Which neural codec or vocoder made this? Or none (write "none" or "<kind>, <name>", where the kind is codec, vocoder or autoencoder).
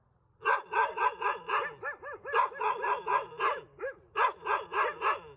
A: none